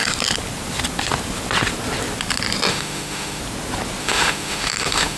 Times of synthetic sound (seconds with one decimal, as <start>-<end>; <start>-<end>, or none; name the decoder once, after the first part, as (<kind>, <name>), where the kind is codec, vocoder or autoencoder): 2.7-3.4 (autoencoder, DAC-VAE); 4.0-5.2